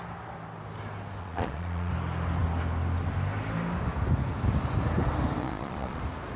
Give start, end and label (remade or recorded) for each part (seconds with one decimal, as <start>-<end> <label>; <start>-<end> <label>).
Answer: 0.0-1.2 recorded; 1.2-1.9 remade; 1.9-5.4 recorded; 5.4-6.0 remade; 6.0-6.4 recorded